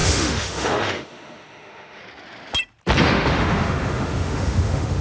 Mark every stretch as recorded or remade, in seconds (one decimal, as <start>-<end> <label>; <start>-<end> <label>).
0.0-2.0 remade; 2.0-3.0 recorded; 3.0-5.0 remade